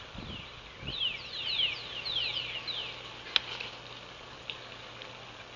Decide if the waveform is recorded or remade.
recorded